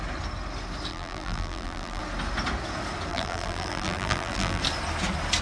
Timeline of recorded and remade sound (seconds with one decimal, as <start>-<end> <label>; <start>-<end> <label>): 0.0-0.9 recorded; 0.9-2.0 remade; 2.0-3.1 recorded; 3.1-4.6 remade; 4.6-5.4 recorded